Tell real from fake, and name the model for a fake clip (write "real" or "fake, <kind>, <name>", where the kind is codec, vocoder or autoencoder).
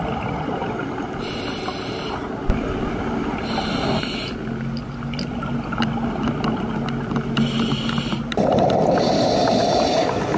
real